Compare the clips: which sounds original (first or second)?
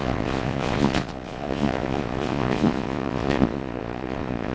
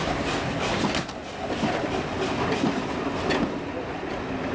second